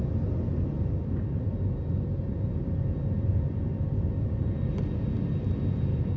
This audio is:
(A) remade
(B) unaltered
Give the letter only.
B